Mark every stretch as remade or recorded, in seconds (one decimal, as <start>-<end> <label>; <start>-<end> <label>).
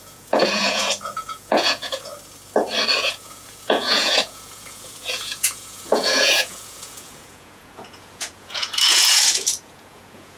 0.0-2.1 remade; 2.1-3.0 recorded; 3.0-10.4 remade